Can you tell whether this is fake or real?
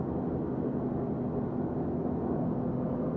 real